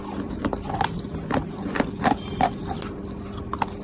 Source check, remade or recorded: recorded